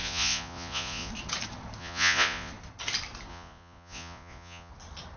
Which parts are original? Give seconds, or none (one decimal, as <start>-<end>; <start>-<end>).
1.1-1.8; 2.5-3.3; 4.7-5.2